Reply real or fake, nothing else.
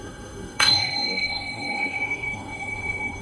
fake